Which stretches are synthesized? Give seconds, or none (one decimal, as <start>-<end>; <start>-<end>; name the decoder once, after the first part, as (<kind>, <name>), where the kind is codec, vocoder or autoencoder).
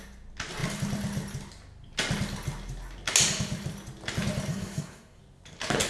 4.5-5.2 (codec, SNAC)